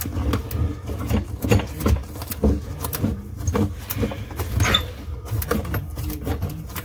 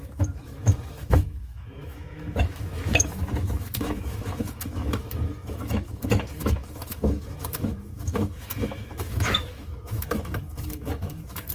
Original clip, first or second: first